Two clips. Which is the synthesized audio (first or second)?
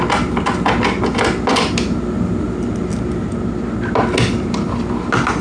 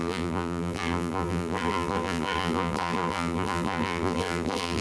second